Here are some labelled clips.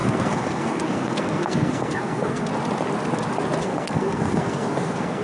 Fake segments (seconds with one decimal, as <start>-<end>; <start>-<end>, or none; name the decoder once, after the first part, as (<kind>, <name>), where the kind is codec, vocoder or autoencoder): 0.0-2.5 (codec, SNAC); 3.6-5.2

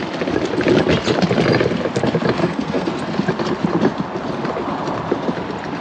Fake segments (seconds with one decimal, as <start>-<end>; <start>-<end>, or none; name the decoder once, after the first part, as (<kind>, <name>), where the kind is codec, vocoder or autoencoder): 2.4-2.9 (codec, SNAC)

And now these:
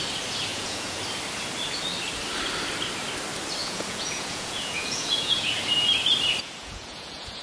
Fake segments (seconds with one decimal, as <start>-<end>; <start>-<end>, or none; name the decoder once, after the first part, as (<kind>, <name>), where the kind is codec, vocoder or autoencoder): 0.5-1.0 (vocoder, Vocos); 3.6-5.5; 6.6-7.4

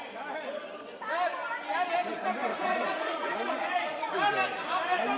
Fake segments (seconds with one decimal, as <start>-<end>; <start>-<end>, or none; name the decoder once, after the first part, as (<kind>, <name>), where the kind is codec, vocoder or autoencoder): 2.5-4.1 (vocoder, Vocos)

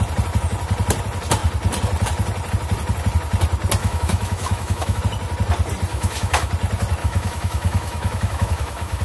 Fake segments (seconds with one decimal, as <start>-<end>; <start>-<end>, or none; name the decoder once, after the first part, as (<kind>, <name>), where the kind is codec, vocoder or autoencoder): 3.8-5.0 (autoencoder, DAC-VAE); 5.9-6.5; 7.0-9.0

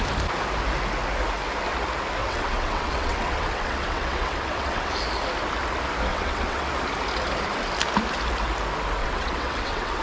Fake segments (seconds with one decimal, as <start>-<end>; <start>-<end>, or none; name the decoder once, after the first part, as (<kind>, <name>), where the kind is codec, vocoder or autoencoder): 2.2-4.9 (vocoder, WaveNeXt); 6.1-6.7; 9.0-10.0

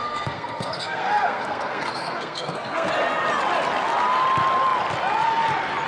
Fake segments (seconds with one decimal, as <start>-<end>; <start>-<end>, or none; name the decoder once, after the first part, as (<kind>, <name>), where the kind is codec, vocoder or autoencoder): 0.0-2.9 (codec, SNAC)

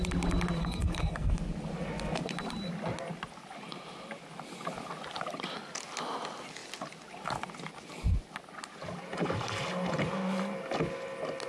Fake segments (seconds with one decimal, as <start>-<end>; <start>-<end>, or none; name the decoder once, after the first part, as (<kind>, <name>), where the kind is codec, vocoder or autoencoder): 0.6-1.4 (codec, SNAC)